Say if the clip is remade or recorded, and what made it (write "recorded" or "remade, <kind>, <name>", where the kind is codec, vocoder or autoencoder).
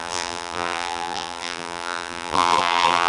remade, vocoder, BigVGAN v2